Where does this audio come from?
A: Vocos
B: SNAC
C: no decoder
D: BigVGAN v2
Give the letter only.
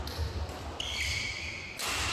C